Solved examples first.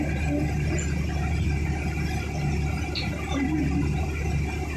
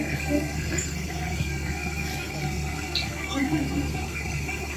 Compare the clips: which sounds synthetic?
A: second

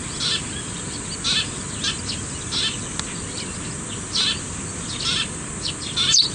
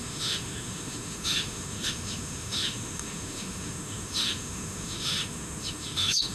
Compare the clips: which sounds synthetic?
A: second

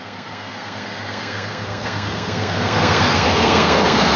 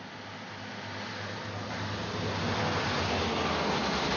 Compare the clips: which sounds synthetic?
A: first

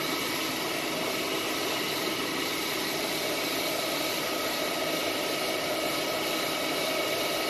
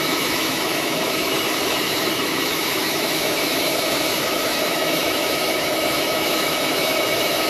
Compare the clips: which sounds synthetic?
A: second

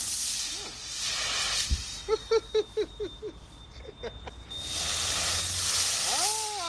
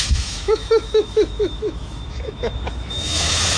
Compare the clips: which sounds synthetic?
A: second